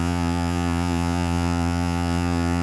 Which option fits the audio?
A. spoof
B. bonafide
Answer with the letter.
A